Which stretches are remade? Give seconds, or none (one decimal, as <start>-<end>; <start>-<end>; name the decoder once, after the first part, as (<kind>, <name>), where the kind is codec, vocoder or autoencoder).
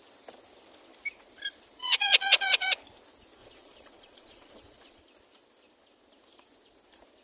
1.8-2.7 (vocoder, Vocos); 3.4-5.0